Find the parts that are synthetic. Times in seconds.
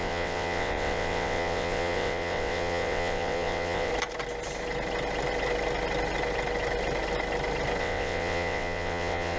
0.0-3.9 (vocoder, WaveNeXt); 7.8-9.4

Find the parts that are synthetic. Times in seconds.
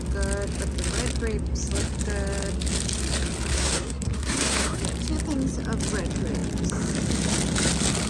3.5-4.8 (codec, SNAC)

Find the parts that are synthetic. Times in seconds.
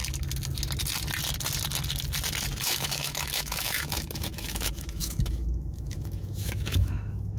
2.6-7.4 (autoencoder, DAC-VAE)